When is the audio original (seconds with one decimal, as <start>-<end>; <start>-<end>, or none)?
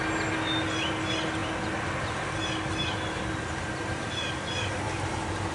0.0-5.5